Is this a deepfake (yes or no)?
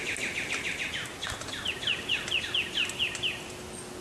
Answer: no